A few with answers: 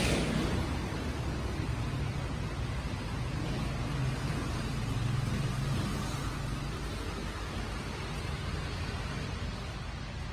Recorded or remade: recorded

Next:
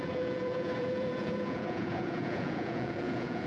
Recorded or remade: remade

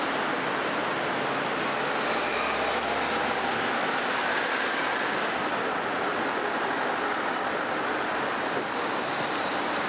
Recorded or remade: recorded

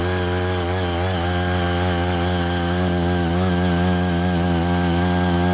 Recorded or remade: recorded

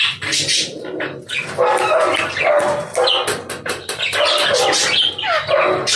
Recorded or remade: recorded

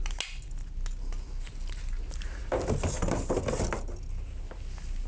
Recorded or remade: recorded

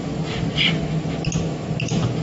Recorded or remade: recorded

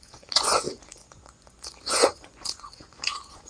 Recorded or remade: remade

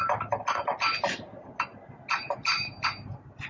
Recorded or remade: recorded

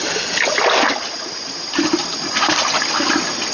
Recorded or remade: recorded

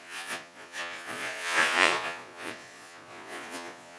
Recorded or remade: remade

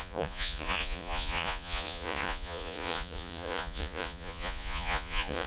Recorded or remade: remade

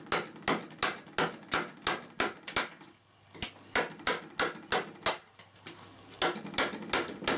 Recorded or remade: recorded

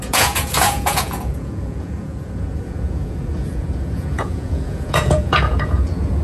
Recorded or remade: remade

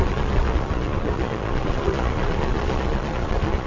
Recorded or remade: remade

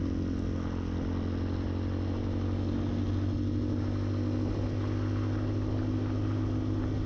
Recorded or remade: recorded